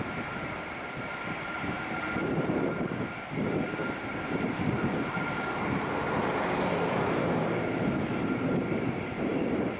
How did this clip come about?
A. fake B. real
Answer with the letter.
A